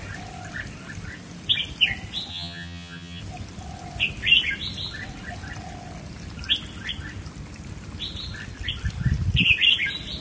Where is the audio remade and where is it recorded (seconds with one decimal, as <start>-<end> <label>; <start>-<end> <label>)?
0.0-2.3 recorded; 2.3-3.2 remade; 3.2-10.2 recorded